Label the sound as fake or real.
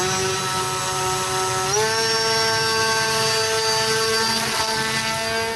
real